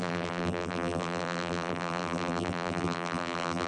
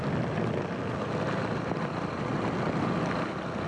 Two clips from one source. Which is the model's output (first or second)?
first